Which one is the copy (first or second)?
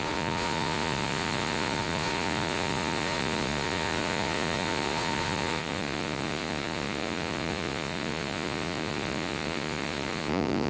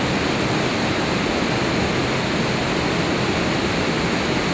first